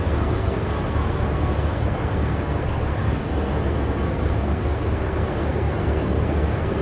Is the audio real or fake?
fake